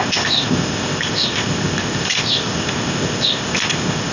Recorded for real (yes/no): no